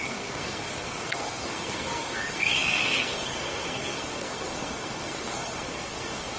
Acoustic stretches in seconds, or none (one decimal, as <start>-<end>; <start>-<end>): none